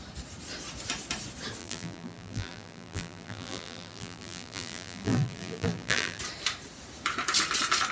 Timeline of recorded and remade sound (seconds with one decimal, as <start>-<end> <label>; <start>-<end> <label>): 0.0-1.6 recorded; 1.6-6.2 remade; 6.2-7.9 recorded